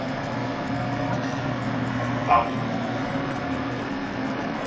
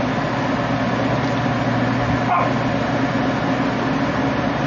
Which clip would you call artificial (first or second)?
first